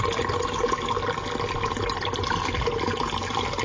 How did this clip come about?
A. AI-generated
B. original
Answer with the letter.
B